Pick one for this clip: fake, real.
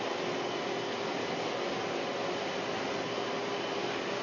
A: real